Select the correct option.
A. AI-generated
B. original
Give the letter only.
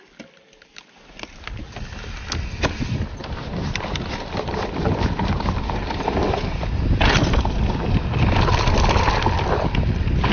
B